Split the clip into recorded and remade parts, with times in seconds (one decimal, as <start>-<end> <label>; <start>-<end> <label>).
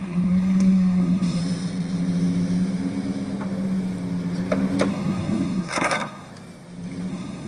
0.0-1.4 remade; 1.4-4.9 recorded; 4.9-6.3 remade; 6.3-7.1 recorded; 7.1-7.5 remade